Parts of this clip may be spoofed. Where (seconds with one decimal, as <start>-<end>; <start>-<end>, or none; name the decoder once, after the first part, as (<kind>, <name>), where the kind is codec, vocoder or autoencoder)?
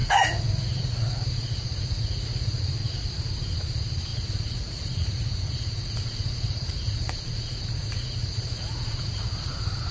0.0-2.6 (vocoder, Vocos); 4.1-9.2